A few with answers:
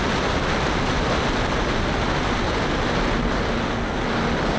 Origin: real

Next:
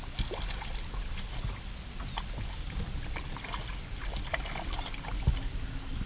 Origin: real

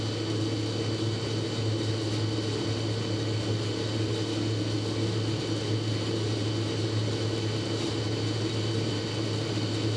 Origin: real